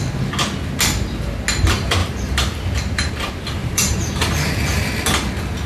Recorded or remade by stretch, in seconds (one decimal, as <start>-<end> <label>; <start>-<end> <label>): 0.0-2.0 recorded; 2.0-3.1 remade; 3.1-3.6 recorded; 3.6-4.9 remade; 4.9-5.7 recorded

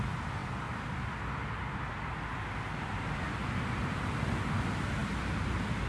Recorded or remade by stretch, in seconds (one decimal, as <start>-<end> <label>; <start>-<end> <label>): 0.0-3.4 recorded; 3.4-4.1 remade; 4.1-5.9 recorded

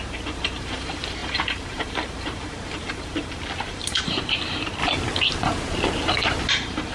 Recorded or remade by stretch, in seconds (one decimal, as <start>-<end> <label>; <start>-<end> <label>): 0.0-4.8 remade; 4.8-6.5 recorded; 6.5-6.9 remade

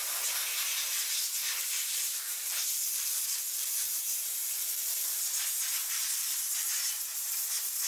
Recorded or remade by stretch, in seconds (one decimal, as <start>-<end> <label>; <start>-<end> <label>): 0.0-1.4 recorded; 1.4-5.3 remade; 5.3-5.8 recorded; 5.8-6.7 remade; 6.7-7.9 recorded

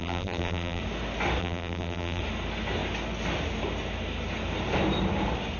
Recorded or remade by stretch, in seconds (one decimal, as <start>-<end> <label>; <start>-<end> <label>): 0.0-0.8 remade; 0.8-1.4 recorded; 1.4-2.2 remade; 2.2-5.6 recorded

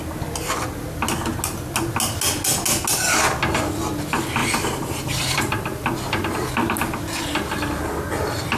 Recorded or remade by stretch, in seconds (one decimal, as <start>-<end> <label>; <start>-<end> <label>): 0.0-4.4 recorded; 4.4-6.5 remade; 6.5-8.6 recorded

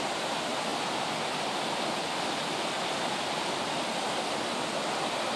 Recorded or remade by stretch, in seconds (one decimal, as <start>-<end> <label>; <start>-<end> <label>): 0.0-5.4 recorded

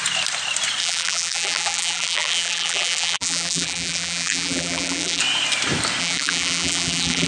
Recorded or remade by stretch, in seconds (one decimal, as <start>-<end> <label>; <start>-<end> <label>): 0.0-0.8 recorded; 0.8-5.2 remade; 5.2-6.0 recorded; 6.0-7.3 remade